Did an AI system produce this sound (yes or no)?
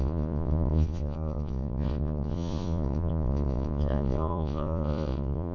yes